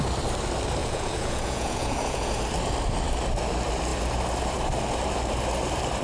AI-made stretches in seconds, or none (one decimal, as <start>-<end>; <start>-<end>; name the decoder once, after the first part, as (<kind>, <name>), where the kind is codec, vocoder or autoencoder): 0.8-2.4 (vocoder, Vocos)